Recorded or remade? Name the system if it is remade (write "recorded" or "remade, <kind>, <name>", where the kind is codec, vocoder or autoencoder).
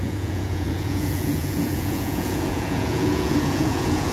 remade, vocoder, Vocos